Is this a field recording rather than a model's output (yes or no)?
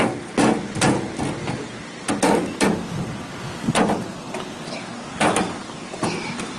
yes